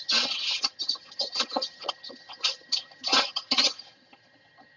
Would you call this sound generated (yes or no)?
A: yes